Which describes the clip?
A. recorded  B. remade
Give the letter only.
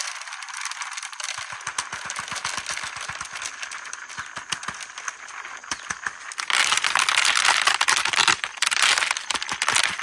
A